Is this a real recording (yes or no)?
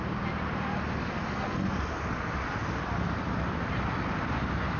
yes